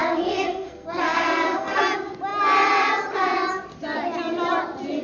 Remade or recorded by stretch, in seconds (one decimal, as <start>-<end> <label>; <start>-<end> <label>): 0.0-1.8 remade; 1.8-5.0 recorded